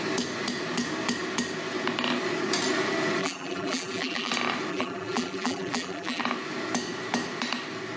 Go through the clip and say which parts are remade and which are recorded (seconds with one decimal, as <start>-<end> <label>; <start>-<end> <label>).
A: 0.0-3.2 recorded; 3.2-4.3 remade; 4.3-4.7 recorded; 4.7-6.2 remade; 6.2-8.0 recorded

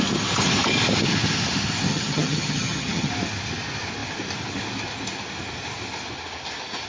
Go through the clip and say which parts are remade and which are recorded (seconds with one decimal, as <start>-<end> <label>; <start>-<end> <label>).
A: 0.0-1.9 recorded; 1.9-3.1 remade; 3.1-6.9 recorded

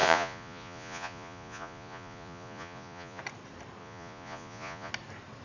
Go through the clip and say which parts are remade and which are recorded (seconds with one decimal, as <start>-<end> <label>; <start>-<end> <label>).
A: 0.0-3.2 remade; 3.2-3.8 recorded; 3.8-4.9 remade; 4.9-5.4 recorded

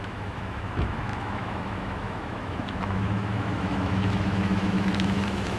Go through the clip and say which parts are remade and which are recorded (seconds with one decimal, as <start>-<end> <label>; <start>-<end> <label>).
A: 0.0-5.6 remade

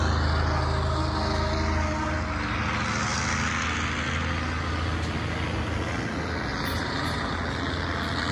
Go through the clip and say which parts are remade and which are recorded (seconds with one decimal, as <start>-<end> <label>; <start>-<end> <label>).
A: 0.0-6.5 recorded; 6.5-7.4 remade; 7.4-8.3 recorded

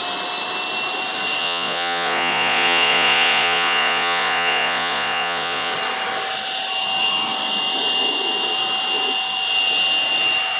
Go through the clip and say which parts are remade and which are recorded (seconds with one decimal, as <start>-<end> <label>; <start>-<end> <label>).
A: 0.0-1.4 recorded; 1.4-5.7 remade; 5.7-10.6 recorded

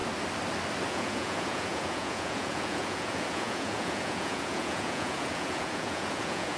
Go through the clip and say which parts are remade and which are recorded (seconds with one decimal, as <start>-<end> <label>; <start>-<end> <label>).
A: 0.0-0.9 recorded; 0.9-6.6 remade